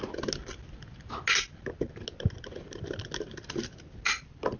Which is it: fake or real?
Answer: real